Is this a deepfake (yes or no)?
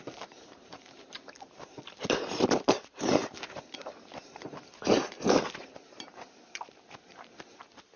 yes